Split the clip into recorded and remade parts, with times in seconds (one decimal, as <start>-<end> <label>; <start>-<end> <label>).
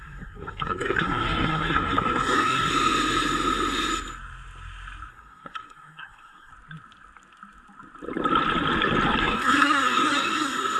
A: 0.0-2.7 remade; 2.7-5.1 recorded; 5.1-6.5 remade; 6.5-9.2 recorded; 9.2-10.8 remade